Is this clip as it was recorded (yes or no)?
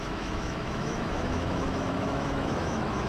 no